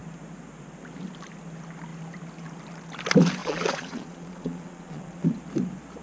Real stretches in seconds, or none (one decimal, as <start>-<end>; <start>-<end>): 0.0-3.4; 5.4-6.0